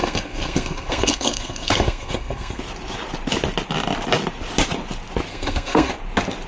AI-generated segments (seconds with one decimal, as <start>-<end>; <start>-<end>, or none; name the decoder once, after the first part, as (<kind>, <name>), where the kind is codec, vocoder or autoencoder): 0.0-2.6 (codec, SNAC); 5.3-5.9